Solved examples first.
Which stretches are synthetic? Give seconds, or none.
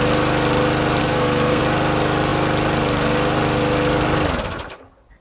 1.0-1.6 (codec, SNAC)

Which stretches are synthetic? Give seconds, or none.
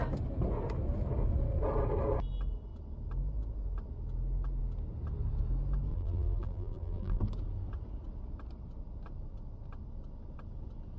5.9-7.2 (vocoder, BigVGAN v2)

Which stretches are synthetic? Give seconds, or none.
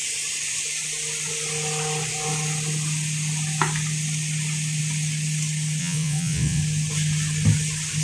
5.8-6.6 (vocoder, WaveNeXt)